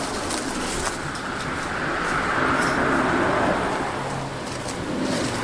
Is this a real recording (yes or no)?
yes